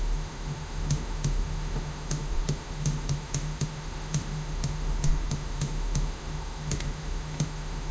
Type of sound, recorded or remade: remade